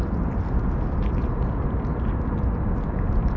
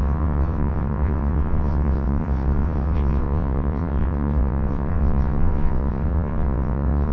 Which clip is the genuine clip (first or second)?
first